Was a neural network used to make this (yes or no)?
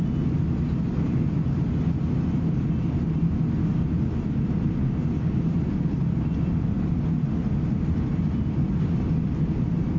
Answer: no